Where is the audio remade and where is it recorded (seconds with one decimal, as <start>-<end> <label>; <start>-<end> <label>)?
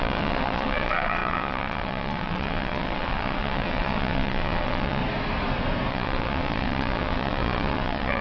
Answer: 0.0-5.0 remade; 5.0-5.9 recorded; 5.9-8.2 remade